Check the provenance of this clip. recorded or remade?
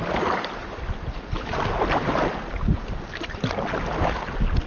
recorded